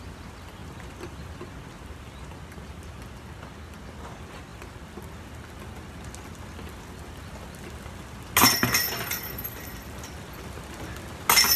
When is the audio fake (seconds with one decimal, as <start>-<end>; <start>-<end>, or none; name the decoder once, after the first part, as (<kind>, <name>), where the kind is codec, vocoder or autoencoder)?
none